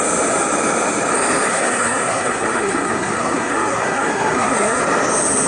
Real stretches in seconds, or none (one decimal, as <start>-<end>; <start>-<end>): 0.0-1.5; 4.8-5.5